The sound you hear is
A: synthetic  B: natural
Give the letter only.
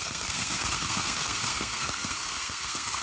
A